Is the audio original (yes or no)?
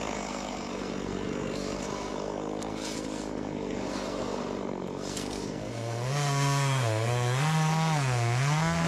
no